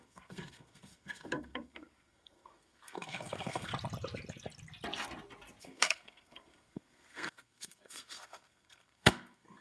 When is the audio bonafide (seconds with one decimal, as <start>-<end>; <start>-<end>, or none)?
3.7-5.6